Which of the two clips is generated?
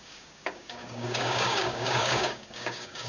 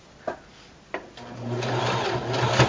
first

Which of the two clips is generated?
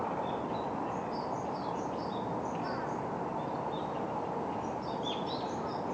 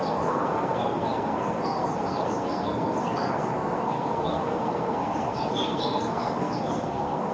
second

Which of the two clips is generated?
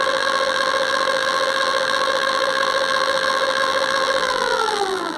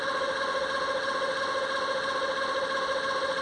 first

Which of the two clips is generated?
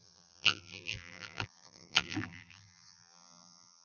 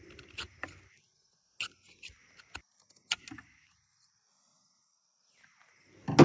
first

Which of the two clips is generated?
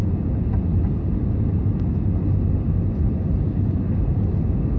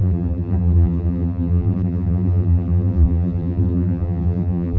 second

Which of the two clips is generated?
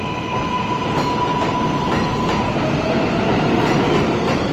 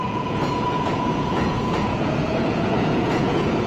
second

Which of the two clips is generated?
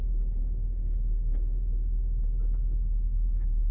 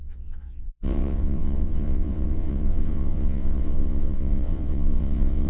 second